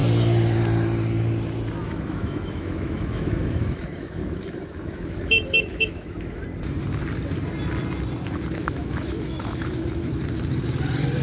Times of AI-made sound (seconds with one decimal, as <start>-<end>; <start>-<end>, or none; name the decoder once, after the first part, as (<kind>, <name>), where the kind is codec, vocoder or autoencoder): 1.8-6.4 (autoencoder, DAC-VAE); 8.6-10.2